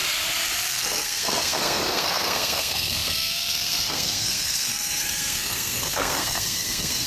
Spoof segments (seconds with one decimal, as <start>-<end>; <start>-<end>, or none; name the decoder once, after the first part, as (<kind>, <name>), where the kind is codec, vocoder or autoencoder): 0.7-7.1 (codec, SNAC)